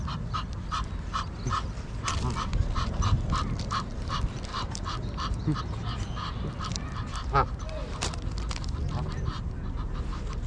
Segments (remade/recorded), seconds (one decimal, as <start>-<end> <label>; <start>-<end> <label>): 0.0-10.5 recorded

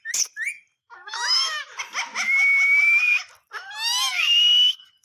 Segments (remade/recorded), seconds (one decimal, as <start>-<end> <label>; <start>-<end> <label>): 0.0-0.8 recorded; 0.8-1.6 remade; 1.6-2.1 recorded; 2.1-3.0 remade; 3.0-5.0 recorded

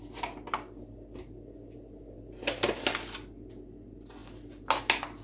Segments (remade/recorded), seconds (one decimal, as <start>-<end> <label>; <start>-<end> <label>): 0.0-5.2 recorded

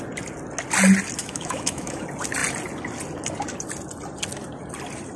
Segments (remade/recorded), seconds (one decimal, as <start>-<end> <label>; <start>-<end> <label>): 0.0-1.2 recorded; 1.2-2.0 remade; 2.0-5.2 recorded